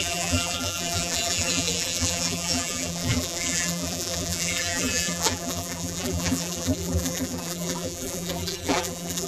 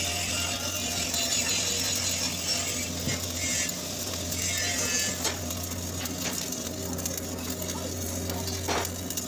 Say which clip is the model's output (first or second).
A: first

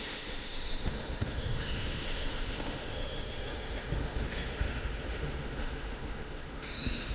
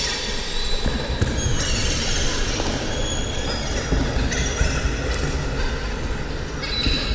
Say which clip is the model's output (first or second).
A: first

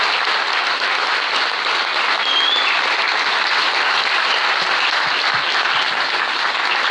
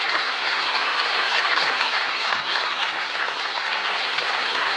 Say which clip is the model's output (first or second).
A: second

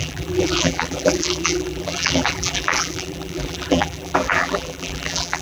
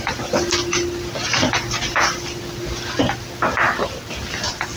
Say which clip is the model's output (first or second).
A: first